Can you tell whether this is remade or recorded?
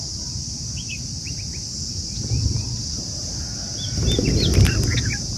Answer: recorded